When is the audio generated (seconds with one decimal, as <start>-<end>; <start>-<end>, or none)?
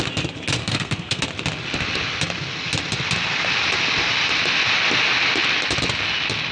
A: 0.6-1.2